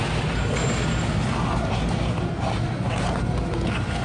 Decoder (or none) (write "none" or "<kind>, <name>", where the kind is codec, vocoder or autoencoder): none